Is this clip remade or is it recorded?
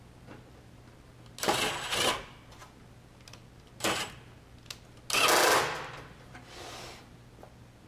recorded